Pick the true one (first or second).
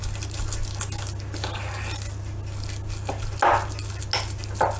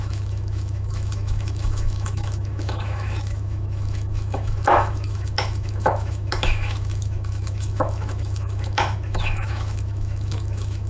first